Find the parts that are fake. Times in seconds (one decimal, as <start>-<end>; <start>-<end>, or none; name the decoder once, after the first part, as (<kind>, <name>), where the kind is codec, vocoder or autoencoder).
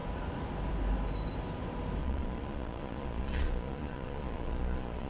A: 2.0-5.1 (vocoder, Vocos)